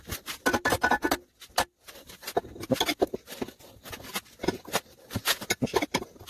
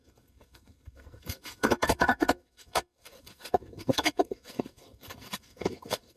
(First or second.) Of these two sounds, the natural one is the first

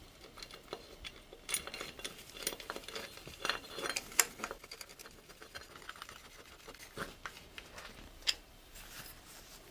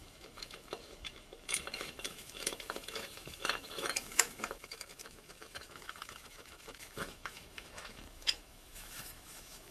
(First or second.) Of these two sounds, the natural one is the first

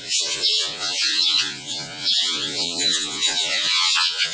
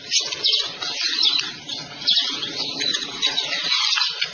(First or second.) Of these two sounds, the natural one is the second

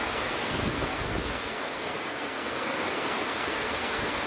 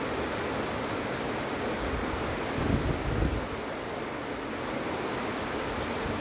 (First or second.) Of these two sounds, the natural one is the second